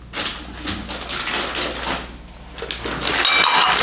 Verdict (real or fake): real